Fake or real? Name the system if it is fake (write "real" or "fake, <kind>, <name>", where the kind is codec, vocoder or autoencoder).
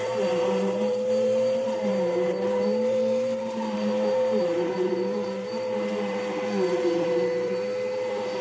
fake, vocoder, BigVGAN v2